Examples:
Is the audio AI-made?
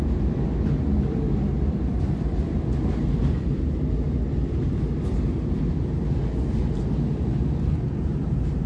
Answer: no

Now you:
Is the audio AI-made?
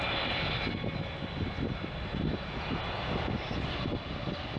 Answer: no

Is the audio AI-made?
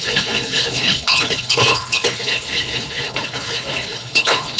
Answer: yes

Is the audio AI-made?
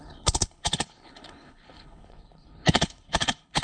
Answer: yes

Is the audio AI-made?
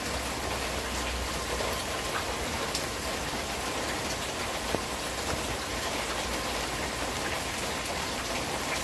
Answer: no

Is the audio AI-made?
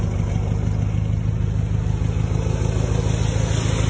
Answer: no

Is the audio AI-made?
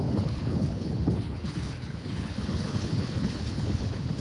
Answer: yes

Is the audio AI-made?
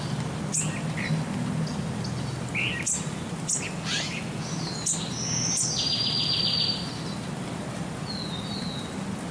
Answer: no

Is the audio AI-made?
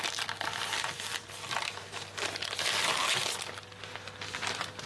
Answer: no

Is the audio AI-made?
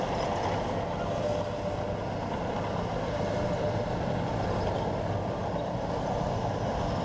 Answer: no